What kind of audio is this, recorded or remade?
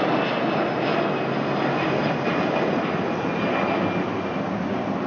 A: recorded